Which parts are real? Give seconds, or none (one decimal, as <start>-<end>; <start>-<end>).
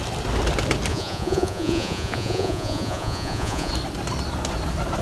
0.0-0.9; 3.7-5.0